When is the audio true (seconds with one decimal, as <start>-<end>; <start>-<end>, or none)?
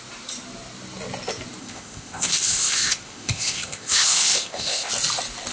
0.0-1.6; 4.9-5.5